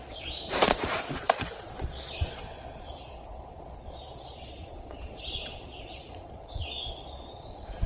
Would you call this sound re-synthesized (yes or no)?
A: yes